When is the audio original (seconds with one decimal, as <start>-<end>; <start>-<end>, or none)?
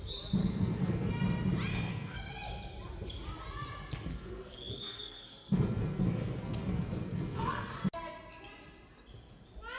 0.0-0.4; 1.1-1.7; 2.3-4.1; 7.7-9.8